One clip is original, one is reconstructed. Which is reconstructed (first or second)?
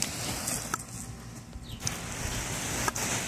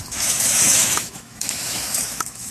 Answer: second